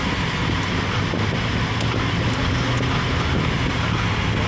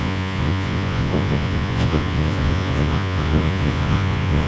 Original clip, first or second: first